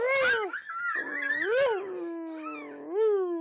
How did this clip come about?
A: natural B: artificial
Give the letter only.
A